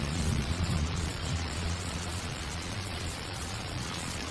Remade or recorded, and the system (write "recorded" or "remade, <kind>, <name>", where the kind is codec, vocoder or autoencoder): remade, vocoder, Vocos